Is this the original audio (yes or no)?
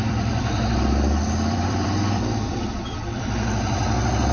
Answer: no